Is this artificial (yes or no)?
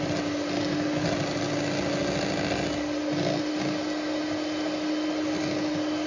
no